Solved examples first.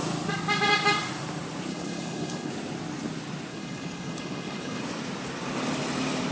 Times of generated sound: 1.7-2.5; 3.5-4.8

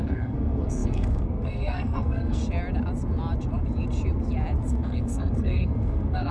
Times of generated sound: 0.0-2.4; 4.7-6.3

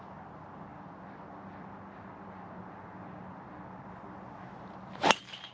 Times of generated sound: none